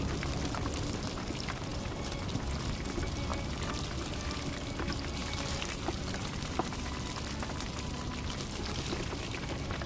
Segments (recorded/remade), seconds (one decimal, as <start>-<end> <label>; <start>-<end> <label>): 0.0-1.7 recorded; 1.7-2.3 remade; 2.3-5.2 recorded; 5.2-6.8 remade; 6.8-9.9 recorded